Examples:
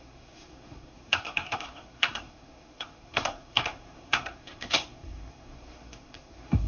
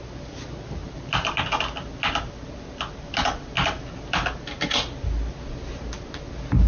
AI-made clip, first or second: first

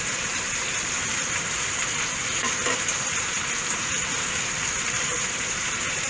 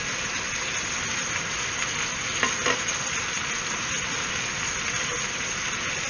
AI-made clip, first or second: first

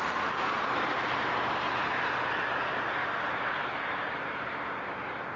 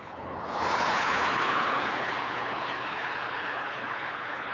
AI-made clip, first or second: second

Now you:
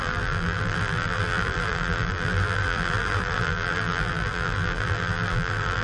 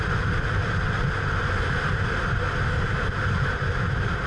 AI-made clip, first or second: first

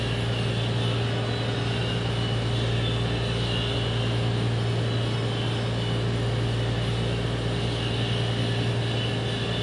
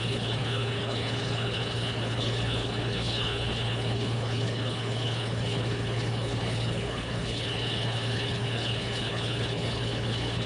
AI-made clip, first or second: second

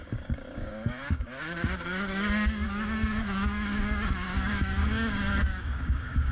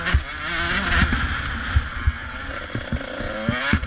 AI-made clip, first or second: first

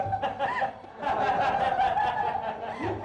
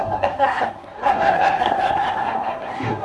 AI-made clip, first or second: second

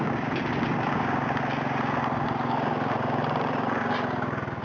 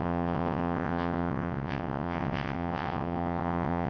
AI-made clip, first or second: second